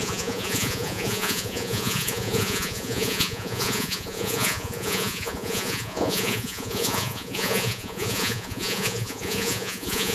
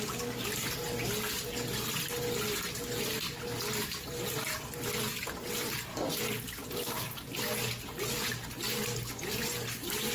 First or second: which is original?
second